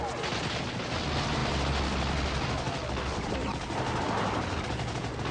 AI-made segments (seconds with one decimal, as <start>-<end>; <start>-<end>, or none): none